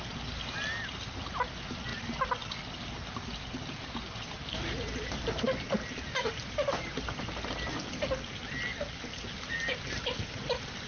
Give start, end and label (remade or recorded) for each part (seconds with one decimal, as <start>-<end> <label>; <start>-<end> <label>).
0.0-8.7 recorded; 8.7-9.4 remade; 9.4-10.9 recorded